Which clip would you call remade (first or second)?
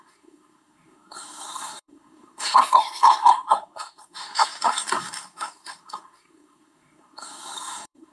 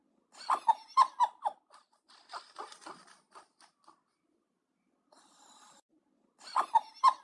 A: first